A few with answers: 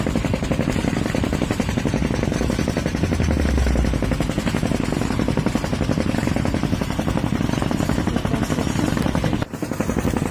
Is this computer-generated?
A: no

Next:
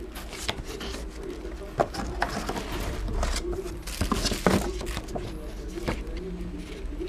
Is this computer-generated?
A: no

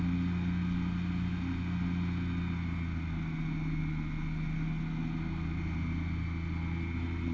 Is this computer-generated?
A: no